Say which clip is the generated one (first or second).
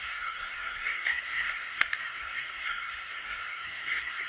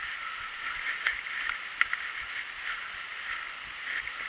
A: first